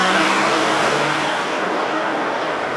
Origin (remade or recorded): remade